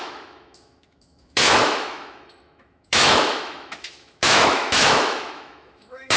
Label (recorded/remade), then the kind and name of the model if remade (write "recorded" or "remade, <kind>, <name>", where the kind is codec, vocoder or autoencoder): remade, autoencoder, DAC-VAE